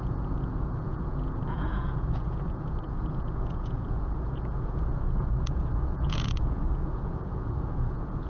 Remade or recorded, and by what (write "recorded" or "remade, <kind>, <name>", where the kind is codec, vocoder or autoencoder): remade, vocoder, Vocos